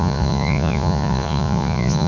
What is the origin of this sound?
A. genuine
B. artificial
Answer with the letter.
B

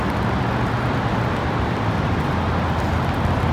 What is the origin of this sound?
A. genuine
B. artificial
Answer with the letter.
A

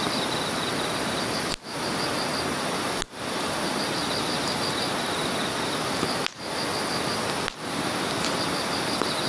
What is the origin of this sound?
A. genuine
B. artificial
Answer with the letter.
A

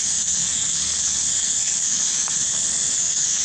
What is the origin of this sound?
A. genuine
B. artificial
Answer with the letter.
B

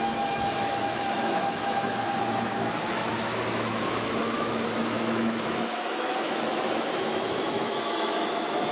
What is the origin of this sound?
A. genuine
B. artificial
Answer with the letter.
B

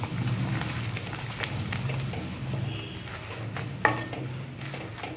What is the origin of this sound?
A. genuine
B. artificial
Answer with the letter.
A